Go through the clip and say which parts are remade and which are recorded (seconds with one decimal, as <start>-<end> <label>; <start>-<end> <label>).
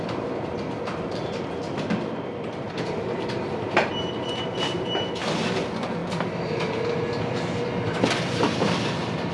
0.0-6.0 remade; 6.0-7.2 recorded; 7.2-9.3 remade